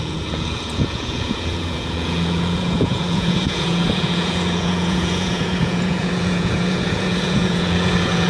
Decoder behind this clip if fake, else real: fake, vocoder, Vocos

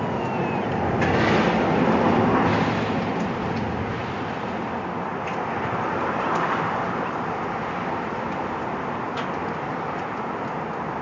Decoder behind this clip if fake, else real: real